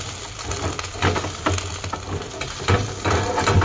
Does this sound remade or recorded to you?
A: recorded